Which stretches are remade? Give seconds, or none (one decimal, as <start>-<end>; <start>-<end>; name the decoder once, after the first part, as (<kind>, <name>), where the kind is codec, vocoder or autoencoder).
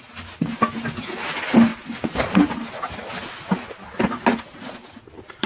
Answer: none